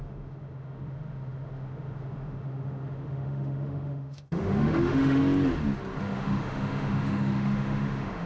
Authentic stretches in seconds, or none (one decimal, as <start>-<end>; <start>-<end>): 5.2-6.0